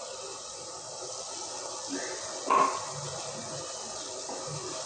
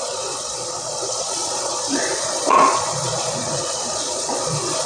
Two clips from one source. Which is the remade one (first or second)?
second